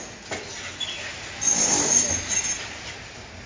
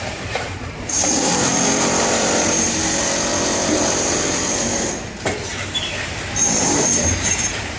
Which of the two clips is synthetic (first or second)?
second